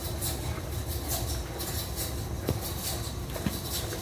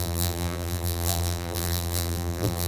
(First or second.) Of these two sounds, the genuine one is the first